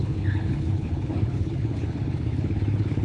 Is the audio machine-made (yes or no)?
yes